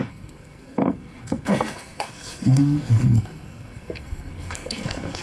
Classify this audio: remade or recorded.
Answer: remade